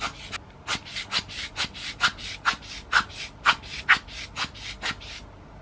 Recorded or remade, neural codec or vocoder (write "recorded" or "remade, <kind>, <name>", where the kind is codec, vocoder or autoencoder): recorded